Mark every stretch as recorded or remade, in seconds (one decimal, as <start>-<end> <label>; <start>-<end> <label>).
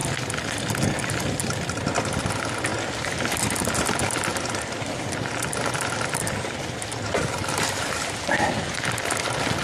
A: 0.0-9.6 recorded